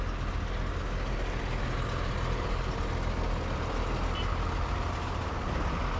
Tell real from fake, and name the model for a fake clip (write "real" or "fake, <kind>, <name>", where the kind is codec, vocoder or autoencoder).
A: real